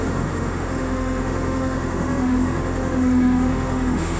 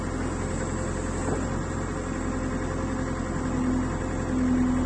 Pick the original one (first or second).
second